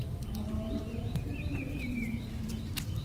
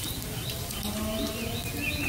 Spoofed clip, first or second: first